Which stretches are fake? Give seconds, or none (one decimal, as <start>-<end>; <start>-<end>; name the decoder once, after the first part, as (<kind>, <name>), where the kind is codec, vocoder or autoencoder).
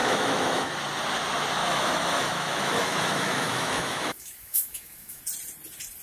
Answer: 0.0-0.7 (autoencoder, DAC-VAE); 1.6-5.2